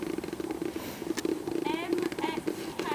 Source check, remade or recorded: recorded